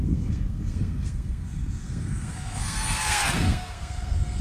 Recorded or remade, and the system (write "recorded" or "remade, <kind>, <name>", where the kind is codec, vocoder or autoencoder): remade, codec, SNAC